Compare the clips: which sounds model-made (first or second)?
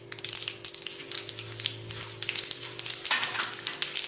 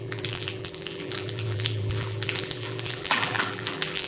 second